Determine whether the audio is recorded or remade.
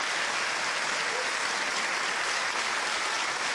recorded